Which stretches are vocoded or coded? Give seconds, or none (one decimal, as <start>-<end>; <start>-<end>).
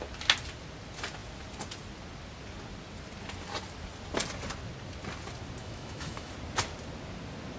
5.6-6.3